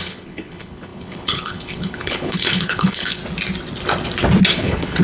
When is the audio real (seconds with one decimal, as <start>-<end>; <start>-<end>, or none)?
3.2-4.5